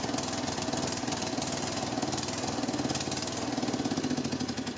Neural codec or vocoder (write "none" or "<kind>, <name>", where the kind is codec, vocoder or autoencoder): none